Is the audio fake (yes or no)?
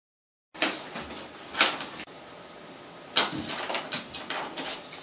no